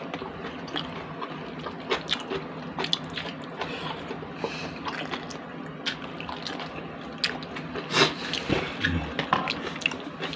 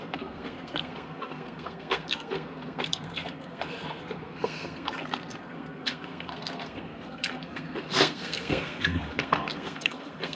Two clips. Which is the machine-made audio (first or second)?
second